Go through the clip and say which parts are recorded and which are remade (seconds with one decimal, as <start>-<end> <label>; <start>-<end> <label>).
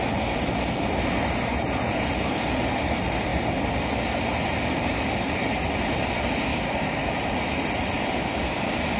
0.0-6.5 recorded; 6.5-7.0 remade; 7.0-9.0 recorded